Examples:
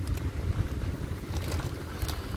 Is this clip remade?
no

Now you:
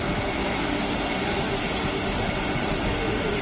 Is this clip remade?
no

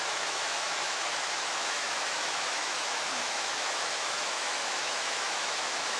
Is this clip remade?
yes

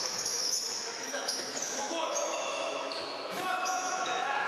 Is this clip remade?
yes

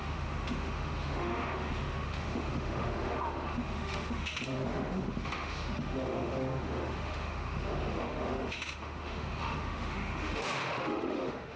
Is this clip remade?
yes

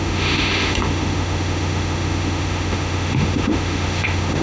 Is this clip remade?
yes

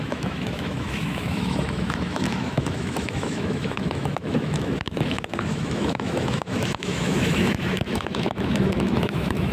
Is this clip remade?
yes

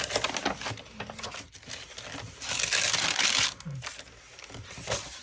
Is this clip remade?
no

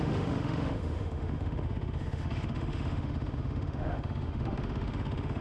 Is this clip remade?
yes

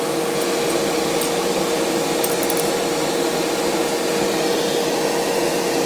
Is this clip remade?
no